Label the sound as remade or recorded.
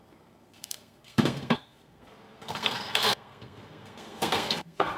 remade